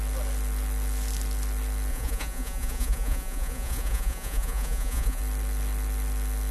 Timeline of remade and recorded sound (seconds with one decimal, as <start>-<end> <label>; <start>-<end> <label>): 0.0-1.9 recorded; 1.9-5.2 remade; 5.2-6.5 recorded

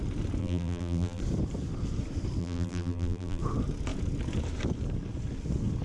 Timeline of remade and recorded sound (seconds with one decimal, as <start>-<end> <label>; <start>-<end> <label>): 0.0-0.4 recorded; 0.4-1.2 remade; 1.2-2.4 recorded; 2.4-3.4 remade; 3.4-5.8 recorded

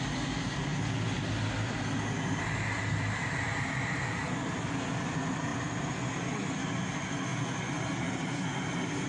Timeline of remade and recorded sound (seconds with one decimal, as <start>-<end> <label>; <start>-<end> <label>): 0.0-5.5 remade; 5.5-6.2 recorded; 6.2-9.1 remade

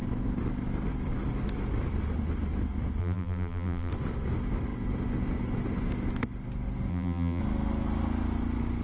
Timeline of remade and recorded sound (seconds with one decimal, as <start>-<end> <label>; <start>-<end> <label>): 0.0-3.0 recorded; 3.0-3.9 remade; 3.9-6.9 recorded; 6.9-7.4 remade; 7.4-8.8 recorded

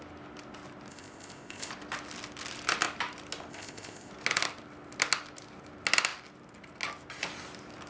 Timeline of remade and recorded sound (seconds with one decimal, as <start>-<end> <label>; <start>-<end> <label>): 0.0-0.9 recorded; 0.9-1.7 remade; 1.7-3.5 recorded; 3.5-4.1 remade; 4.1-7.9 recorded

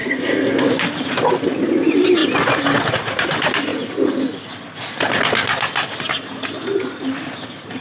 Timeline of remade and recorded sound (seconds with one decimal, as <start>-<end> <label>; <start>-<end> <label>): 0.0-0.7 remade; 0.7-7.8 recorded

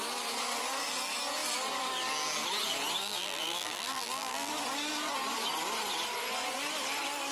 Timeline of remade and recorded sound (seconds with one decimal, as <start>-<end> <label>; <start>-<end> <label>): 0.0-3.0 recorded; 3.0-4.5 remade; 4.5-7.3 recorded

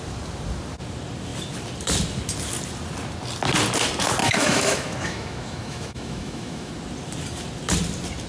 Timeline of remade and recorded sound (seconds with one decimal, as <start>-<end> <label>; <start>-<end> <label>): 0.0-4.2 recorded; 4.2-6.7 remade; 6.7-8.3 recorded